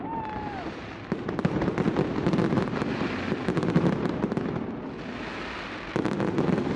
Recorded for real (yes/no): yes